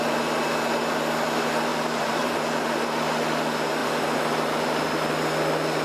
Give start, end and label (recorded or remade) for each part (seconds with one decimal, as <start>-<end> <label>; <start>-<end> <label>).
0.0-1.7 recorded; 1.7-2.4 remade; 2.4-3.8 recorded; 3.8-5.1 remade; 5.1-5.8 recorded